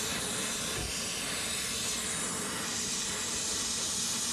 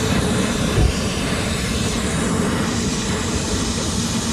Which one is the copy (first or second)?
second